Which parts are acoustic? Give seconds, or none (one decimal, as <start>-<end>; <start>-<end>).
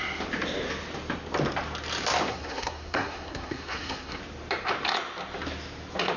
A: 0.0-2.3; 4.2-6.2